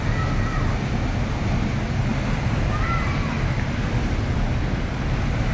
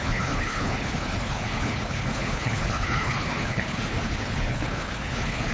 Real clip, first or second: first